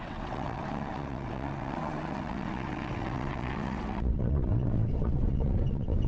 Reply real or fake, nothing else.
fake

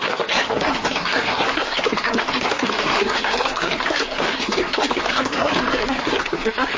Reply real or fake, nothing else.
fake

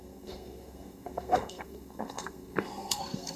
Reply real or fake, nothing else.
fake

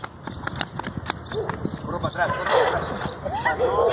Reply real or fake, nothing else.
real